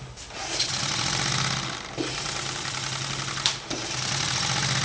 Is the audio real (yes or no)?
yes